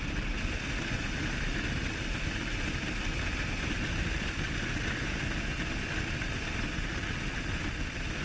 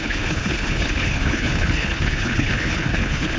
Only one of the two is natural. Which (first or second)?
first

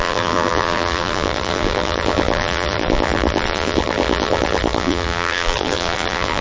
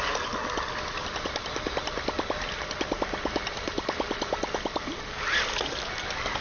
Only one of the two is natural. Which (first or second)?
second